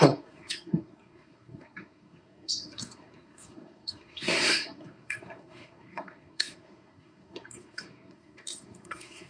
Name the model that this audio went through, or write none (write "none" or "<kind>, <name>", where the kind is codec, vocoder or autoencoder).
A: codec, SNAC